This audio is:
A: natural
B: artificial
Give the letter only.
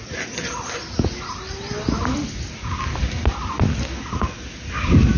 A